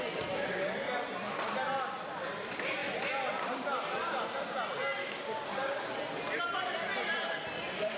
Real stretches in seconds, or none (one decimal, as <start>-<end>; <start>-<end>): 0.0-5.0; 5.9-8.0